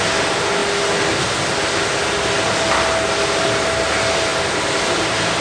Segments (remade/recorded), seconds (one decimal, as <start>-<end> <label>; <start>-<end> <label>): 0.0-5.4 recorded